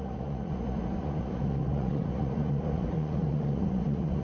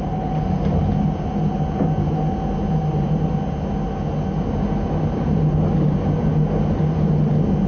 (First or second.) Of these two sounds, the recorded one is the second